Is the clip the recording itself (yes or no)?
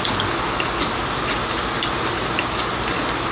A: yes